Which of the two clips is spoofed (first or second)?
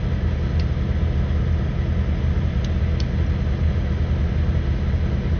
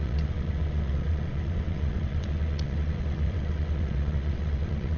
second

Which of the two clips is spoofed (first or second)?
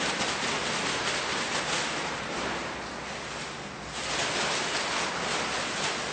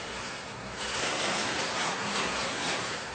second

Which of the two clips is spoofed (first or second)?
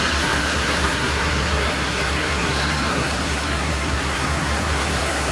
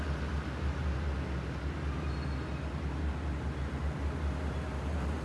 first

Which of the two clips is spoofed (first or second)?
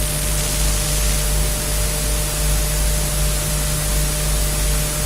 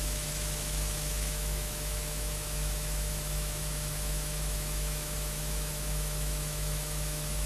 second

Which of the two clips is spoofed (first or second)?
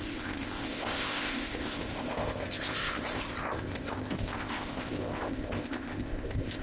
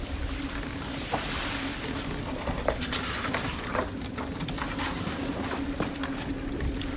first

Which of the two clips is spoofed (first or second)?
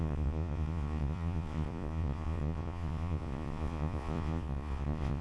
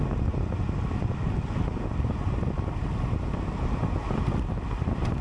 first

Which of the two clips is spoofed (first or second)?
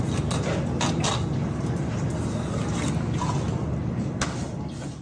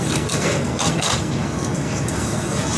second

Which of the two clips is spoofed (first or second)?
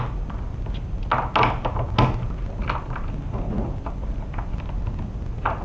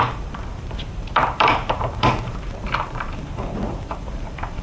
second